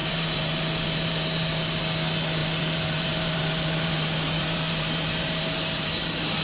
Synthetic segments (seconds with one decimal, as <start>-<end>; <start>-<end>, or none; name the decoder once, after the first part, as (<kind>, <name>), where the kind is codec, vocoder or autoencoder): 0.0-1.8 (vocoder, BigVGAN v2); 2.4-6.4